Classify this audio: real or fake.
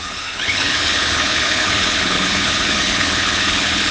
fake